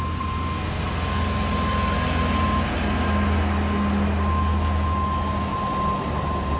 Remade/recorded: recorded